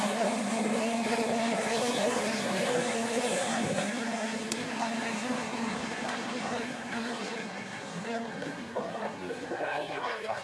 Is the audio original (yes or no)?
no